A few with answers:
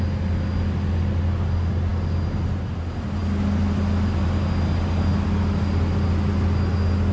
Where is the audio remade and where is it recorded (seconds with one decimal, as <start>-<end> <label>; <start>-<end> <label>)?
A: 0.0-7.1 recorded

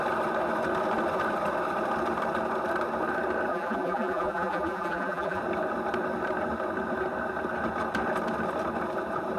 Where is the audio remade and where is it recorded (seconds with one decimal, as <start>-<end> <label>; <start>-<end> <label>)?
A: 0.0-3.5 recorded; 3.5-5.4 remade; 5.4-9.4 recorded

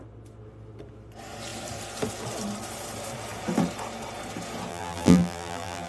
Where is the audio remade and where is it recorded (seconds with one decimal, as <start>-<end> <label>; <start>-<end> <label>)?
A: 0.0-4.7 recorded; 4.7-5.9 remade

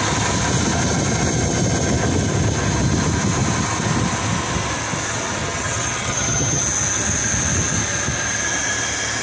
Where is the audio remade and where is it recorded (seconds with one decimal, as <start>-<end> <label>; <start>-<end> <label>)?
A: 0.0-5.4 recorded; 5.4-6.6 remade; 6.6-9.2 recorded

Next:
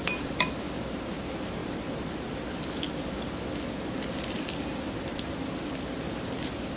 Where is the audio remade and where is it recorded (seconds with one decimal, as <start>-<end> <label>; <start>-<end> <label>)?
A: 0.0-6.8 recorded

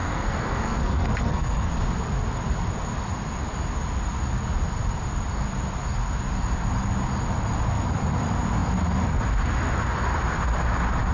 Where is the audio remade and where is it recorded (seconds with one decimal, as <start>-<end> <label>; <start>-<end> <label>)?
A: 0.0-1.7 remade; 1.7-11.1 recorded

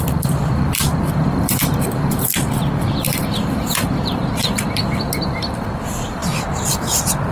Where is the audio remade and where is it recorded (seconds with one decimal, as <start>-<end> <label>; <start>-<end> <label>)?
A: 0.0-7.3 remade

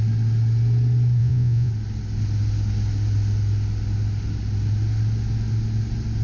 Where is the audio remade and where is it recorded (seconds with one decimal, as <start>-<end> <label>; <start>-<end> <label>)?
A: 0.0-1.2 recorded; 1.2-1.7 remade; 1.7-6.2 recorded